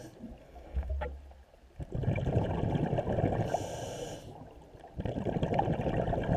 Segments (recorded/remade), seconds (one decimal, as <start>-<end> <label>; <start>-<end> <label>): 0.0-0.4 recorded; 0.4-0.9 remade; 0.9-6.4 recorded